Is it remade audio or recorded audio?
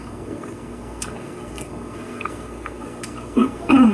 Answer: remade